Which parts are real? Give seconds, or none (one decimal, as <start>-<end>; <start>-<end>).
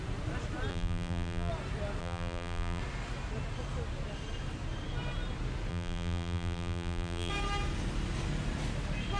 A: 0.0-0.7; 1.5-2.0; 2.8-5.7; 7.3-9.2